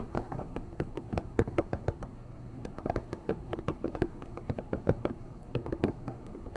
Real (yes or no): no